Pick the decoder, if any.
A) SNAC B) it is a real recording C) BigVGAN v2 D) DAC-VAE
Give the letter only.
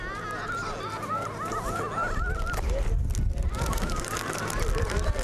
B